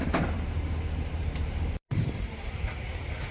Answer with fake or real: fake